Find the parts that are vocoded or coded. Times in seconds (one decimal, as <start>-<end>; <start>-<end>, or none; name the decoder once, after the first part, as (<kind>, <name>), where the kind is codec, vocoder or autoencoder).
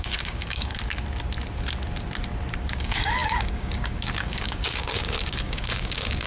0.0-0.7 (codec, DAC); 2.7-6.3